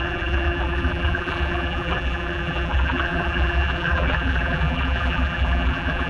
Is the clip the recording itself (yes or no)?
no